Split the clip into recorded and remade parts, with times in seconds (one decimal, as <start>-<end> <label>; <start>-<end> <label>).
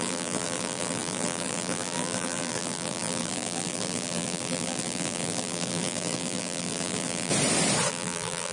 0.0-7.3 remade; 7.3-7.9 recorded; 7.9-8.5 remade